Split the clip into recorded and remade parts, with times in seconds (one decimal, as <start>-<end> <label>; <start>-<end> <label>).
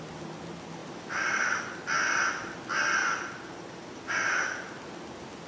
0.0-0.8 recorded; 0.8-1.6 remade; 1.6-3.0 recorded; 3.0-4.1 remade; 4.1-5.5 recorded